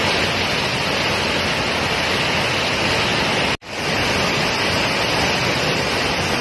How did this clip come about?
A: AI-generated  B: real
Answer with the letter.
B